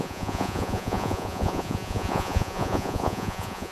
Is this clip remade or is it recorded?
remade